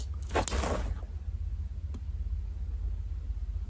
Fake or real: real